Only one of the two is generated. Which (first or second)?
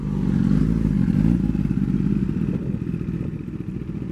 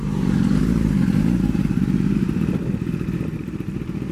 second